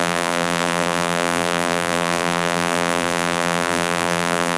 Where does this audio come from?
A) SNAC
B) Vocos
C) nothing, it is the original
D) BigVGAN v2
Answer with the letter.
D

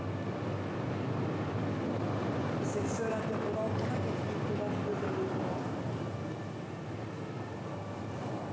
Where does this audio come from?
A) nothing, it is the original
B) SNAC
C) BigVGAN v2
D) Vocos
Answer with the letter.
A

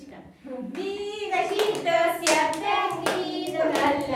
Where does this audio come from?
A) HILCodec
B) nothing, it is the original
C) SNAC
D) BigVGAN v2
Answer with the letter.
B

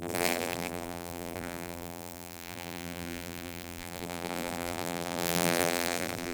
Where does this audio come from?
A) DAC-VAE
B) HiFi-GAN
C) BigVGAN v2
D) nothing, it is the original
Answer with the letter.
C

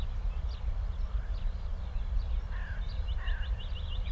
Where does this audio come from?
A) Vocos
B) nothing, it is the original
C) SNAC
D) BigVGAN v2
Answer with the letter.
B